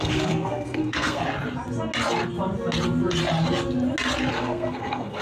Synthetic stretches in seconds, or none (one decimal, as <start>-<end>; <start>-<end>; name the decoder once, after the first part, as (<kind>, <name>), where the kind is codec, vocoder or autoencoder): 0.0-1.2 (codec, SNAC); 4.3-5.2